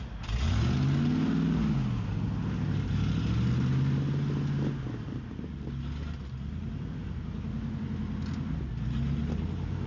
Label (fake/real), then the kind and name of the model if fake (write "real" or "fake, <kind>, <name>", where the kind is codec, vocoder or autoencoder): real